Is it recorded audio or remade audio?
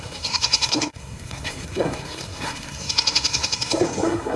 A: remade